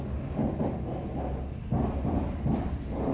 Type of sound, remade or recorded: recorded